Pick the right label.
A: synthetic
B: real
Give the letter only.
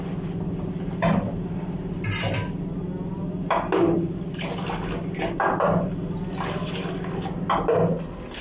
B